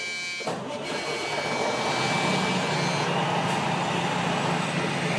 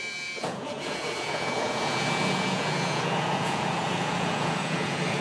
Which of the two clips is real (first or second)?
first